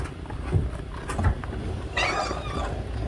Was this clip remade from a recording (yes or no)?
no